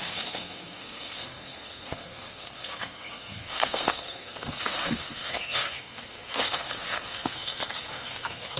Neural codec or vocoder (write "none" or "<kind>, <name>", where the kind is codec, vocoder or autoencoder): codec, SNAC